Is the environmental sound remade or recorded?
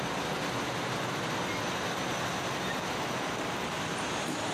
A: recorded